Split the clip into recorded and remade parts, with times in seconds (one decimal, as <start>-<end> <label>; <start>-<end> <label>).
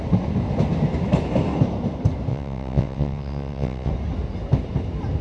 0.0-2.3 recorded; 2.3-3.9 remade; 3.9-5.2 recorded